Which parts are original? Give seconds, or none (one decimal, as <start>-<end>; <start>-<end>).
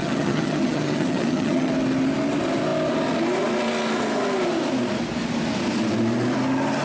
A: 1.7-6.8